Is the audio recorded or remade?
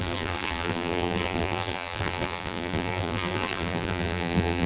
remade